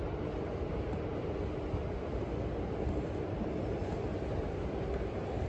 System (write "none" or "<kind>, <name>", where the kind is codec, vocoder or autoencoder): none